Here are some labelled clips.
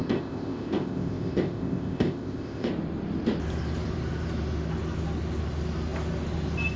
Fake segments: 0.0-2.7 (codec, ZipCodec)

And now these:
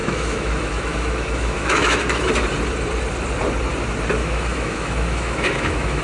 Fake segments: 0.0-2.3 (autoencoder, DAC-VAE); 4.2-6.0

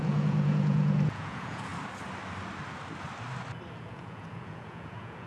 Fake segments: 0.0-1.7 (vocoder, Vocos); 3.8-5.3